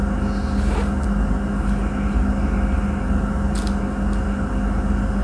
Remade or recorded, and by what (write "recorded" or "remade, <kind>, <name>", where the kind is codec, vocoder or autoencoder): recorded